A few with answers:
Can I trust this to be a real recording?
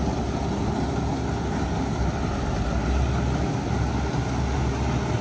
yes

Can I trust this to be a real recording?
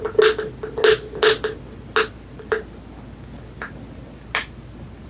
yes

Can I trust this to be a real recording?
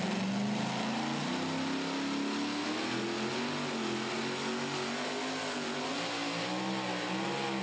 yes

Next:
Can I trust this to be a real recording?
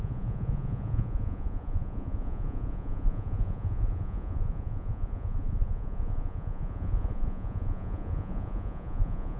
no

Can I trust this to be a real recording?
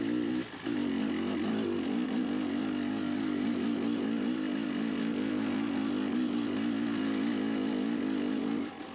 yes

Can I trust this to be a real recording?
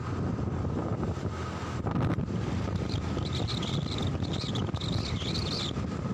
yes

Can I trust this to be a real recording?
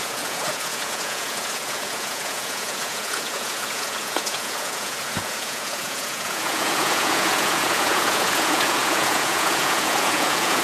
no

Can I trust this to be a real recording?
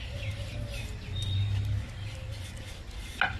yes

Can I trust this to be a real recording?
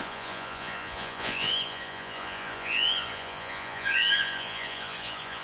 no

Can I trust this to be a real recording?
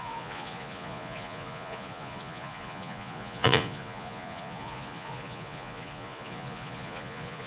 no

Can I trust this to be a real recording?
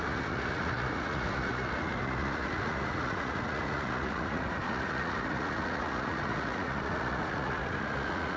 no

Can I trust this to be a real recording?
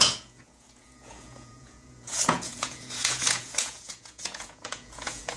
no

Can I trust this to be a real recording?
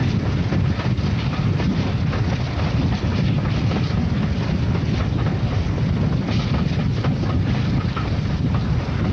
yes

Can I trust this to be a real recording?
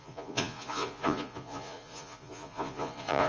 no